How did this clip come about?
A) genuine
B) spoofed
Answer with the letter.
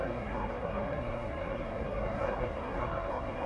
B